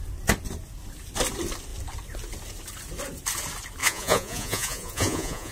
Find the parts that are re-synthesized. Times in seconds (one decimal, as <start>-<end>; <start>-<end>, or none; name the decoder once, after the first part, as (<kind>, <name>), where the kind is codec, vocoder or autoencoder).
3.8-5.5 (vocoder, Vocos)